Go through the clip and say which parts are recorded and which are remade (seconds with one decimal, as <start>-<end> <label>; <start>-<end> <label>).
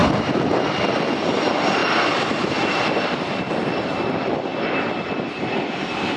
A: 0.0-1.2 remade; 1.2-1.8 recorded; 1.8-3.4 remade; 3.4-6.2 recorded